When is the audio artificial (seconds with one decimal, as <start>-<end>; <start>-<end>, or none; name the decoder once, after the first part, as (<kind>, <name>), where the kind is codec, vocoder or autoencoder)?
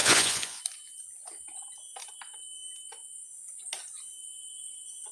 0.0-0.6 (vocoder, Vocos)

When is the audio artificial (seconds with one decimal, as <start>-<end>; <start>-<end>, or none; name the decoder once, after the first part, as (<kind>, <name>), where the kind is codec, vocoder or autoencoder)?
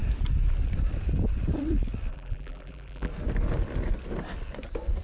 2.1-3.1 (vocoder, BigVGAN v2)